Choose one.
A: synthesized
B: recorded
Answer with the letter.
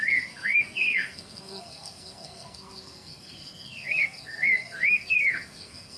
A